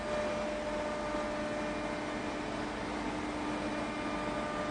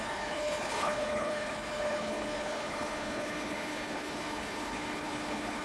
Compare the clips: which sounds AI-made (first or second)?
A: second